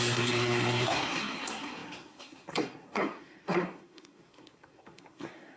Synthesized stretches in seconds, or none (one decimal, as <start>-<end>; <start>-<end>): 0.0-5.6

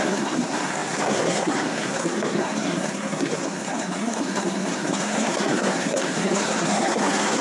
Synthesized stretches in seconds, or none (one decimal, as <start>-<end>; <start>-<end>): 0.0-7.4

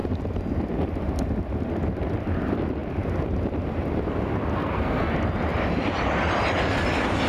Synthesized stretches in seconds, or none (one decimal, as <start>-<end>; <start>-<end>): 4.5-5.1

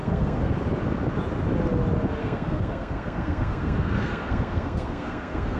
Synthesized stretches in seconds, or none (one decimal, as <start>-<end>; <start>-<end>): 0.0-0.5; 2.2-5.6

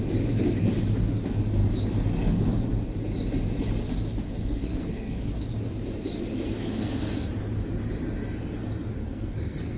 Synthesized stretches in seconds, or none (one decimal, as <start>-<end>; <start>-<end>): 4.4-5.3; 6.3-7.3; 9.0-9.8

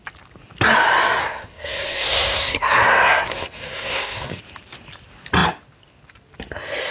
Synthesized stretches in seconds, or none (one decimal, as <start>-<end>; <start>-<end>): 1.2-4.4

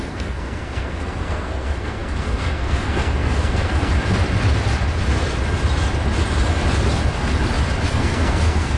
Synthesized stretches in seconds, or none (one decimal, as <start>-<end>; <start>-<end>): 0.0-3.9; 7.9-8.8